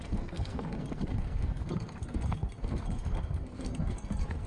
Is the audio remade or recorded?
remade